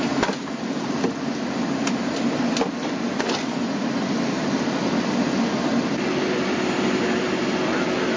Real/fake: real